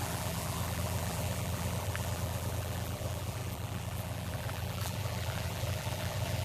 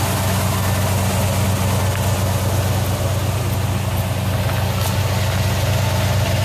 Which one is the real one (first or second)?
second